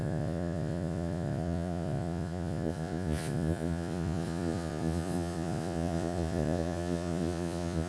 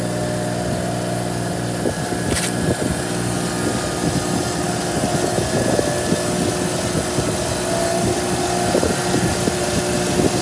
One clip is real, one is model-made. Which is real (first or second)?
second